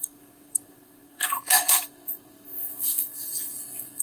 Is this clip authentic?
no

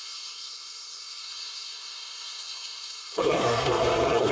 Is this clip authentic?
no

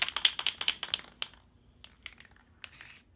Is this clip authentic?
yes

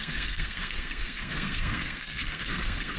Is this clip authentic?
no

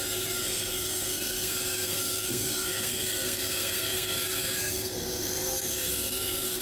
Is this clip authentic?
no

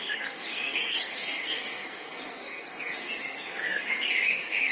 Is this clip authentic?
no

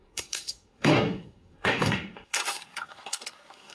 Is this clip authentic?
no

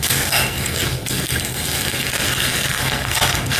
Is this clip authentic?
no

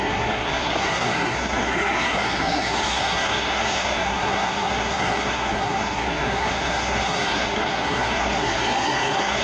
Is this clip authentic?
no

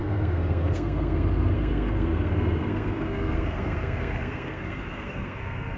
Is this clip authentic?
no